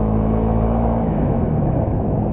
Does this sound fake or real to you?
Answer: fake